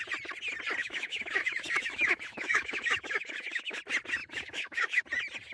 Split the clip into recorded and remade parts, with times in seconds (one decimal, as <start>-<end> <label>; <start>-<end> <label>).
0.0-0.8 recorded; 0.8-3.8 remade; 3.8-4.2 recorded; 4.2-5.0 remade; 5.0-5.5 recorded